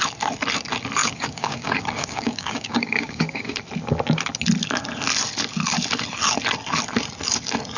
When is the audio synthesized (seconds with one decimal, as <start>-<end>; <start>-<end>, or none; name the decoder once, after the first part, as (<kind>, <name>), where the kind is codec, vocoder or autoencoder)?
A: 1.0-3.6 (codec, DAC)

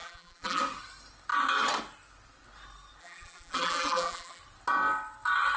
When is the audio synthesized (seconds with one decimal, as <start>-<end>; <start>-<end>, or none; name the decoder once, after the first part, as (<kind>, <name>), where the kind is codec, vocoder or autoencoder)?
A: 0.0-0.6 (vocoder, BigVGAN v2); 3.0-4.4

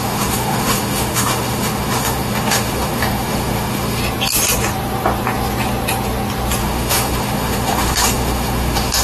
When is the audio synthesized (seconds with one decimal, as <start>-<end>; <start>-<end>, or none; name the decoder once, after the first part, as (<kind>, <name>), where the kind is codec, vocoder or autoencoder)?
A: 0.0-4.0 (autoencoder, DAC-VAE); 6.6-9.0

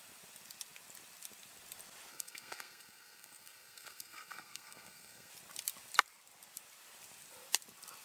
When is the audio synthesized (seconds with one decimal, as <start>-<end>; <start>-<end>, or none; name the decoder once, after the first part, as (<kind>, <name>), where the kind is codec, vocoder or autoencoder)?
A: 2.1-5.3 (codec, SNAC)

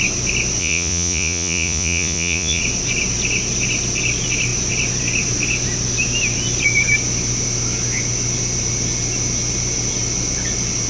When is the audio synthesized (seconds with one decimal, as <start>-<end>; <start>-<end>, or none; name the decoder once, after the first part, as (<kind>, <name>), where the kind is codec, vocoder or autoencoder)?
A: 0.6-2.6 (vocoder, Vocos)